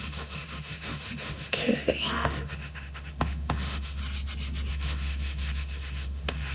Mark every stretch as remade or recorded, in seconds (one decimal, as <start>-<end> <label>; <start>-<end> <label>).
0.0-4.0 remade; 4.0-4.7 recorded; 4.7-6.5 remade